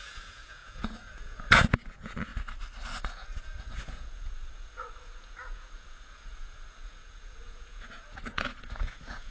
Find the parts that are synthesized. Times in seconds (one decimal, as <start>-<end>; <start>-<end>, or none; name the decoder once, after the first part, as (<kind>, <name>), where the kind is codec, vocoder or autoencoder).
0.0-2.3 (vocoder, Vocos); 3.1-9.3